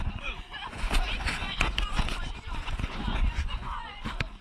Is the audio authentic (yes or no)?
no